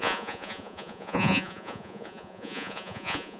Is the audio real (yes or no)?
no